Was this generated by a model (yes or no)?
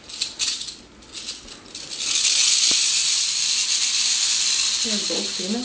no